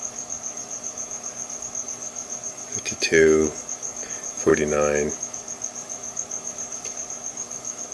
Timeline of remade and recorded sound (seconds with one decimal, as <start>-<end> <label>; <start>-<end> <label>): 0.0-4.5 remade; 4.5-5.2 recorded; 5.2-7.9 remade